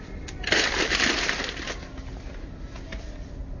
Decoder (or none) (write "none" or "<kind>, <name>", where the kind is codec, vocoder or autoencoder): none